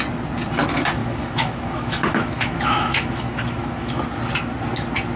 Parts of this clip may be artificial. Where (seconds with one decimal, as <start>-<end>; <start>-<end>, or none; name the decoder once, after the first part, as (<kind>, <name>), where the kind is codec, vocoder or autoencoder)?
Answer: 1.0-4.0 (autoencoder, DAC-VAE)